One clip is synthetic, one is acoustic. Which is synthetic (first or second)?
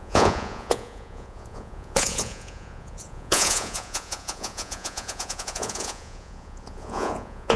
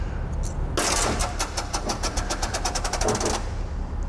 first